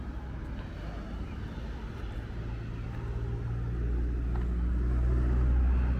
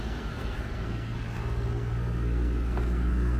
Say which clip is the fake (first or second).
second